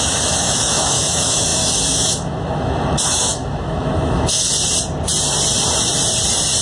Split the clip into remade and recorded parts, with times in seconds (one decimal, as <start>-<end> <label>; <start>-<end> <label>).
0.0-4.5 remade; 4.5-6.6 recorded

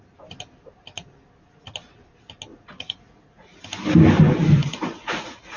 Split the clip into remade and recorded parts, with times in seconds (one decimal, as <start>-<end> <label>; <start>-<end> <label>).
0.0-2.5 recorded; 2.5-3.6 remade; 3.6-4.6 recorded; 4.6-5.6 remade

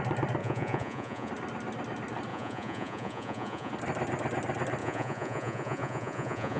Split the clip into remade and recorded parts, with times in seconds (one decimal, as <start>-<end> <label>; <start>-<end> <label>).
0.0-0.4 recorded; 0.4-1.3 remade; 1.3-2.3 recorded; 2.3-3.7 remade; 3.7-4.8 recorded; 4.8-6.6 remade

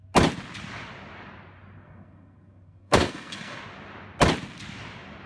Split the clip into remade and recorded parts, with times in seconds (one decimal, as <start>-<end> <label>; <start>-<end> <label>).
0.0-1.8 recorded; 1.8-3.6 remade; 3.6-5.3 recorded

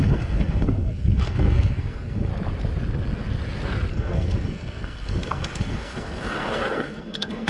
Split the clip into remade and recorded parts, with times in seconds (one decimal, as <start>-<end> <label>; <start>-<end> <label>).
0.0-2.3 remade; 2.3-3.9 recorded; 3.9-7.5 remade

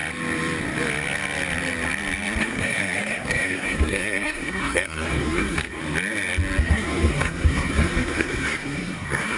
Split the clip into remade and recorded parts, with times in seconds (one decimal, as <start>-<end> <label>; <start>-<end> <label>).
0.0-2.4 recorded; 2.4-5.8 remade; 5.8-6.6 recorded; 6.6-9.4 remade